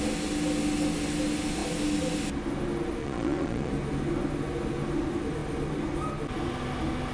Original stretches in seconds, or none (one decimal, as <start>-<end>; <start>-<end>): 0.0-3.0; 3.7-7.1